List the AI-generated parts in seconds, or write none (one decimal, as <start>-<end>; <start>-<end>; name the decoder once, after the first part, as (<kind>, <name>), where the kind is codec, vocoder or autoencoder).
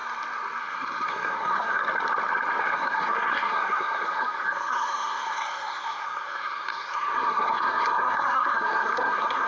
0.6-1.8 (codec, SNAC); 2.6-9.5